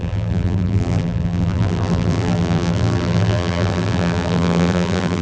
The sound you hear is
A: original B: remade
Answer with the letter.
B